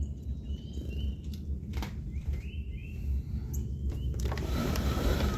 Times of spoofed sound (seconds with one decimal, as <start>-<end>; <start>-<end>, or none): 0.0-2.8; 3.9-5.4